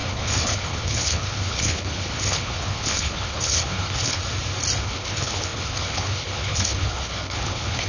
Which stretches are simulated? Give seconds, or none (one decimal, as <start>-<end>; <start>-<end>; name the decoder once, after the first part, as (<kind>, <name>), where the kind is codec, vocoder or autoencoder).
0.0-4.2 (codec, HILCodec); 4.8-7.9